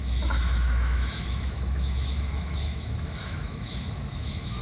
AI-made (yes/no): yes